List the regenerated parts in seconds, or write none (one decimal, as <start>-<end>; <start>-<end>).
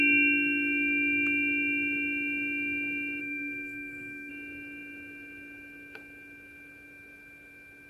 3.2-4.3